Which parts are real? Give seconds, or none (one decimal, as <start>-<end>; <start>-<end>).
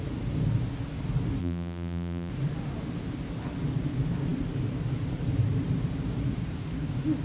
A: 0.0-1.4; 2.3-7.2